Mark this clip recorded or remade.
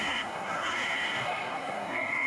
remade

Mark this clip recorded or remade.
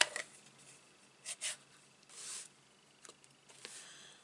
recorded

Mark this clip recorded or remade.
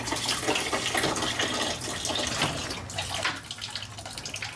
recorded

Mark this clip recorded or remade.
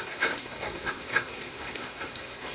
remade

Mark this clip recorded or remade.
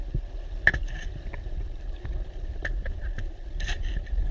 recorded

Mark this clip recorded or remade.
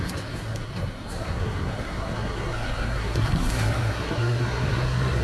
remade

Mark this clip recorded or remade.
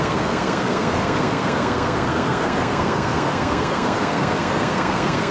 remade